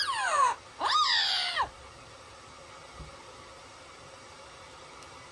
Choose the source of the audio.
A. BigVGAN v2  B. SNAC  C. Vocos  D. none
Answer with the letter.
A